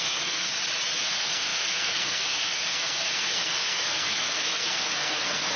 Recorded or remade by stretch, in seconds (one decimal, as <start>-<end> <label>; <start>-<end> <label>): 0.0-0.5 remade; 0.5-1.0 recorded; 1.0-5.6 remade